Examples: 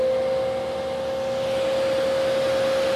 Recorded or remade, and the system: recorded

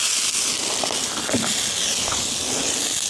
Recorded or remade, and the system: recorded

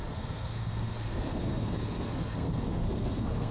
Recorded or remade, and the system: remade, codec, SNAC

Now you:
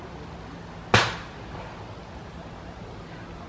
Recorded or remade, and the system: recorded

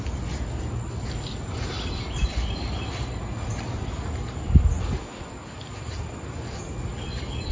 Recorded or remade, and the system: recorded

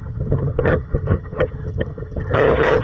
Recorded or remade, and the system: remade, vocoder, HiFi-GAN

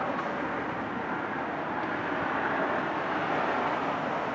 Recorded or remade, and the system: recorded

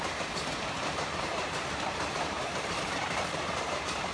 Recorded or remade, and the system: remade, vocoder, BigVGAN v2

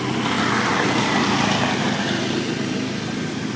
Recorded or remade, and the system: recorded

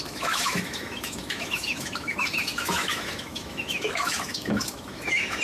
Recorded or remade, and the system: remade, autoencoder, DAC-VAE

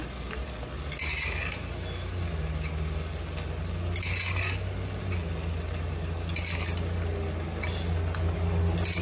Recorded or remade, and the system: recorded